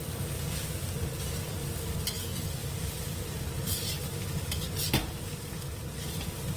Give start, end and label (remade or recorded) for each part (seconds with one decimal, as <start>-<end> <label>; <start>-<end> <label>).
0.0-2.6 recorded; 2.6-3.3 remade; 3.3-6.6 recorded